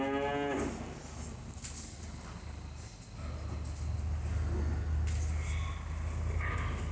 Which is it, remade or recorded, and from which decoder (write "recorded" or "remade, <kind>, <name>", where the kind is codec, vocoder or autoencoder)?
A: recorded